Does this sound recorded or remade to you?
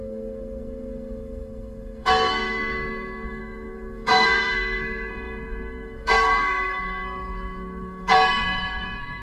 remade